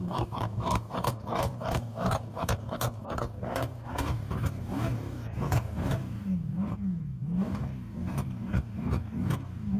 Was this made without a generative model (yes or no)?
no